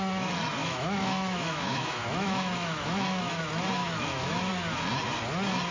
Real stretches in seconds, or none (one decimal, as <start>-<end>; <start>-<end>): 0.0-0.6; 3.4-3.8; 4.5-5.7